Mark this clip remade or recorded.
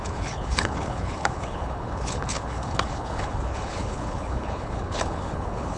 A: remade